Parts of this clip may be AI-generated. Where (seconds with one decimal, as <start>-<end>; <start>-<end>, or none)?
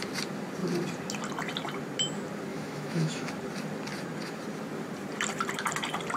2.5-3.3